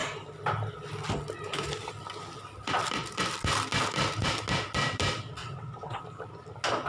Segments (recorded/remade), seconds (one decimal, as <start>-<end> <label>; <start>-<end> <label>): 0.0-5.4 recorded; 5.4-6.0 remade; 6.0-6.9 recorded